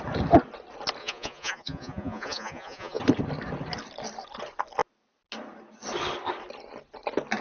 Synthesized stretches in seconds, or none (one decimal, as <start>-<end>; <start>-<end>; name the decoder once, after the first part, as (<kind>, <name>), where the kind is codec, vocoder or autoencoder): 1.0-3.0 (vocoder, Vocos)